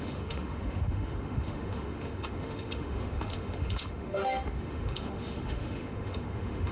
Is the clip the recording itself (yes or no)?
no